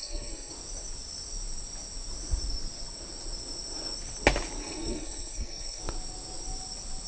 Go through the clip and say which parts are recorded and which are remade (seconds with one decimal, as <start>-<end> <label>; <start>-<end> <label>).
0.0-0.5 remade; 0.5-4.6 recorded; 4.6-5.8 remade; 5.8-7.1 recorded